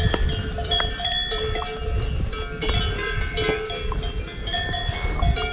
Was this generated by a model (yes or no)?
no